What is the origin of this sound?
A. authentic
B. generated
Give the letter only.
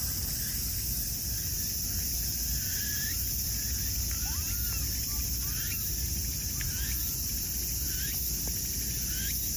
A